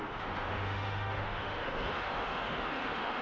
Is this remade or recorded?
remade